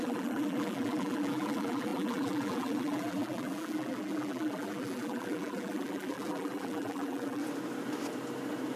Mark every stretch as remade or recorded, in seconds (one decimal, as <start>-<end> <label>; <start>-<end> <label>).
0.0-7.4 remade; 7.4-8.8 recorded